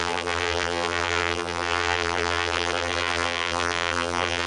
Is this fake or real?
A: fake